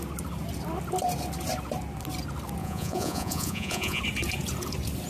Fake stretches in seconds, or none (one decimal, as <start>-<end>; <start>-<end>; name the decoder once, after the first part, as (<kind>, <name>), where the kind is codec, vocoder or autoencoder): 2.6-4.0 (vocoder, Vocos)